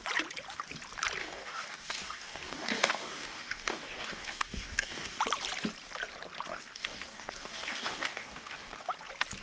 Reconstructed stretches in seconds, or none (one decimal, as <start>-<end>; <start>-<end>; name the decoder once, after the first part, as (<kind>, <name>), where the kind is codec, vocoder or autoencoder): 1.2-5.2 (codec, DAC); 6.5-8.9